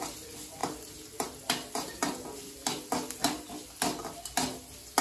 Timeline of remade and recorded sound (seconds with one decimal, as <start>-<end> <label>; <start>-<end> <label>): 0.0-5.0 recorded